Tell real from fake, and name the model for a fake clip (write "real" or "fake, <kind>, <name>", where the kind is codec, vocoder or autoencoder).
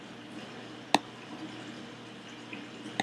real